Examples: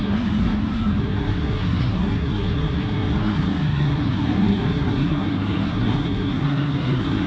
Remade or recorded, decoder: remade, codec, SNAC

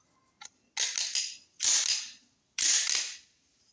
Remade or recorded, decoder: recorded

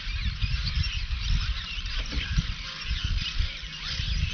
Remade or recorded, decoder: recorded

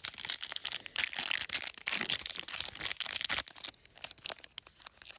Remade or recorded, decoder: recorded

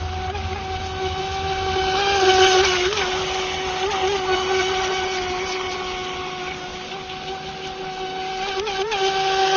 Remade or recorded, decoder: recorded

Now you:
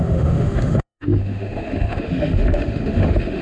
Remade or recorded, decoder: remade, autoencoder, DAC-VAE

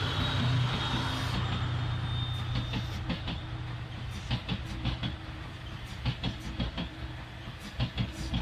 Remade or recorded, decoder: recorded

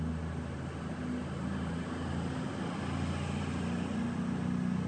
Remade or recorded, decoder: recorded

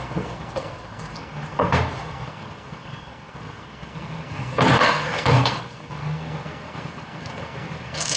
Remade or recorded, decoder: remade, codec, SNAC